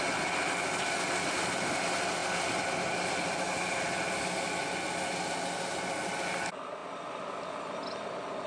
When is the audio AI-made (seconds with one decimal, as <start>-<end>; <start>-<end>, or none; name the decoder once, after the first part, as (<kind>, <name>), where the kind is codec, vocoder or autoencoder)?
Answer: none